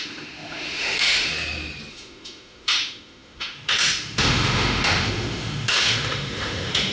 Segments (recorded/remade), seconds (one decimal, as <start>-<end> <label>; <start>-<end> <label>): 0.0-1.3 remade; 1.3-1.9 recorded; 1.9-6.9 remade